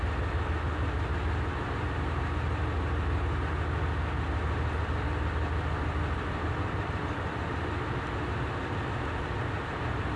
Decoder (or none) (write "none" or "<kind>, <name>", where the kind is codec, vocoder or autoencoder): none